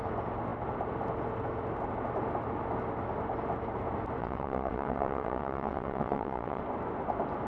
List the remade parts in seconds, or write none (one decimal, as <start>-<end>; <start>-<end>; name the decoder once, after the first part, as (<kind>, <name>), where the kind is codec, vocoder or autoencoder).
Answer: 4.2-6.6 (vocoder, WaveNeXt)